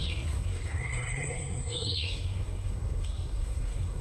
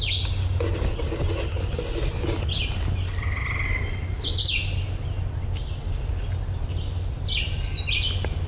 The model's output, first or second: first